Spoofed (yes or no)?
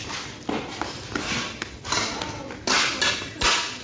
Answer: no